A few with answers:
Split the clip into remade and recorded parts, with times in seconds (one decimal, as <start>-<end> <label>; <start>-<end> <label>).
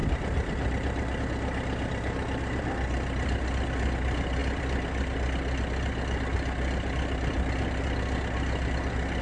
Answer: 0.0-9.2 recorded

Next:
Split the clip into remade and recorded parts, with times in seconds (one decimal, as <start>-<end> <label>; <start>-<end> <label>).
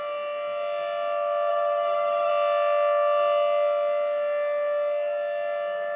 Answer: 0.0-1.5 recorded; 1.5-2.3 remade; 2.3-6.0 recorded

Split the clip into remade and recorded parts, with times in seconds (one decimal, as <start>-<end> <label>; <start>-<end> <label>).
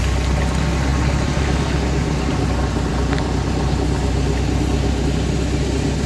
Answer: 0.0-6.1 recorded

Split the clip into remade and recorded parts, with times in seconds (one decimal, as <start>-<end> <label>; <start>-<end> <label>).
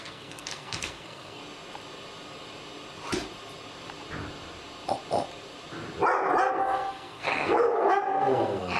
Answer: 0.0-1.4 remade; 1.4-6.5 recorded; 6.5-8.8 remade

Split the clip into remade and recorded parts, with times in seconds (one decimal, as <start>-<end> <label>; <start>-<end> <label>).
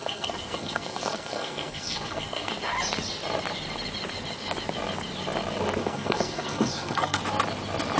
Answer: 0.0-2.5 remade; 2.5-5.8 recorded; 5.8-7.2 remade; 7.2-8.0 recorded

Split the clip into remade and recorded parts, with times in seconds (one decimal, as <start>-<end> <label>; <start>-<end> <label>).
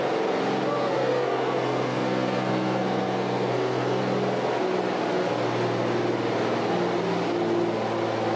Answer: 0.0-0.8 recorded; 0.8-4.0 remade; 4.0-8.4 recorded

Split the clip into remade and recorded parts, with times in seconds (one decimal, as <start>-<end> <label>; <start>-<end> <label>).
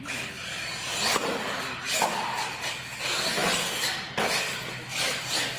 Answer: 0.0-5.6 recorded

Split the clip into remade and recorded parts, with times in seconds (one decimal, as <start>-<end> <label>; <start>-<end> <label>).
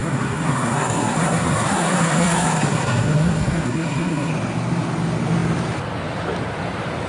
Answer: 0.0-4.3 remade; 4.3-7.1 recorded